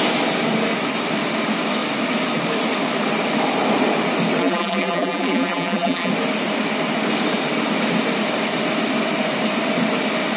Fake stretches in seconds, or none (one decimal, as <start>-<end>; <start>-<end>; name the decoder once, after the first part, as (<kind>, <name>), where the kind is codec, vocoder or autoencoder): 4.4-6.1 (vocoder, BigVGAN v2)